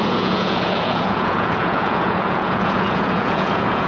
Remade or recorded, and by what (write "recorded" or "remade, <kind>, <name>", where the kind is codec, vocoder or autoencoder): remade, vocoder, Vocos